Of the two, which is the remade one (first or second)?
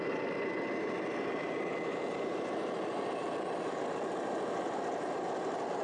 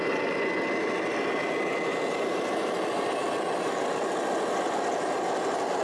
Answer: first